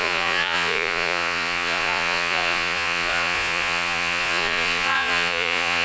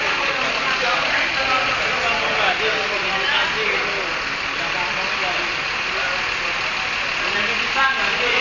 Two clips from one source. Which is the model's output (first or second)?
first